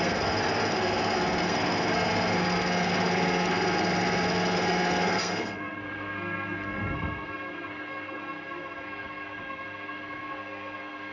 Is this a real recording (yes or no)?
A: no